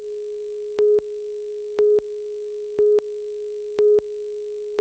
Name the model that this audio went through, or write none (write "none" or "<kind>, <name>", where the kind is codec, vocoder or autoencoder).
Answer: none